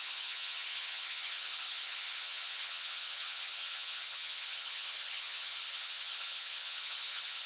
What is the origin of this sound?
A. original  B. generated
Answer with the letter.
B